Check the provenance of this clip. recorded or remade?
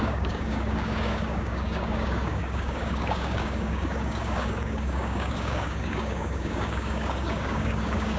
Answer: remade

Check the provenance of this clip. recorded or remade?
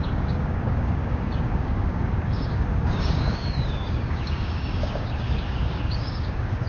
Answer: remade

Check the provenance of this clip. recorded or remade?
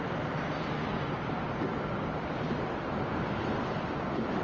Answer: recorded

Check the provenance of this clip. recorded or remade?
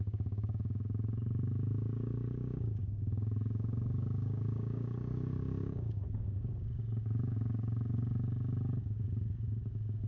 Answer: remade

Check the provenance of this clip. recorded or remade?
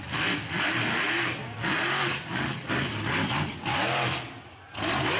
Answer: recorded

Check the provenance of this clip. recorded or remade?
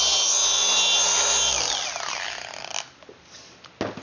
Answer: recorded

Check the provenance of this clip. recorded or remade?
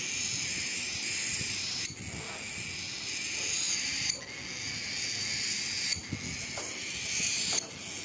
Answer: recorded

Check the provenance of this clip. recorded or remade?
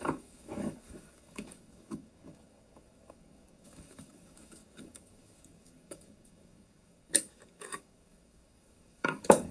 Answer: remade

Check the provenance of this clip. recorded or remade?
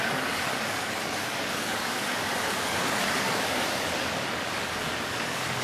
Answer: remade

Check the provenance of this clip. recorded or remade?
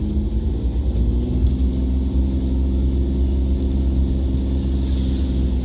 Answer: recorded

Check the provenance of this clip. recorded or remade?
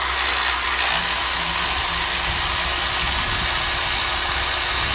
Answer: recorded